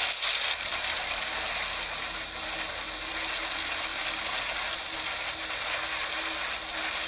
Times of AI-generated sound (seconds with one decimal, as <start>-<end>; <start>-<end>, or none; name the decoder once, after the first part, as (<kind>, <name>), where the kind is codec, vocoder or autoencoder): none